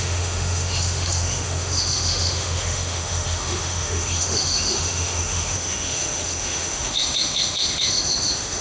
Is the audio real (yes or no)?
no